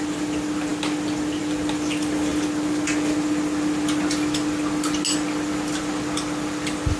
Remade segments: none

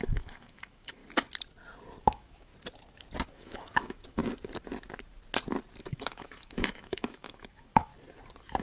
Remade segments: 0.0-1.0; 2.0-2.5; 3.3-4.2; 5.8-7.9

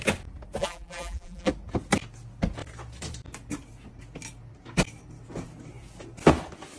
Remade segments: 0.6-1.5

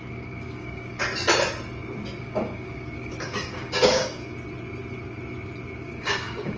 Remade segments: 0.0-1.0; 2.2-4.2; 5.8-6.6

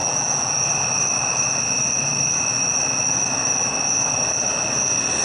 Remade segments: 0.0-0.5

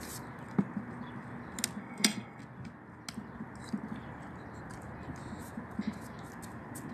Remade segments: 1.8-2.4

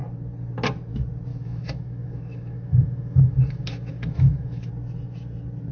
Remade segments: 1.3-4.7

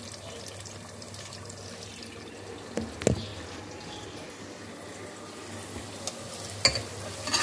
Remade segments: none